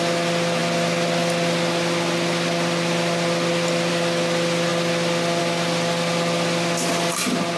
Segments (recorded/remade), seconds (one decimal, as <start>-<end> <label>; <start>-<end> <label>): 0.0-7.6 recorded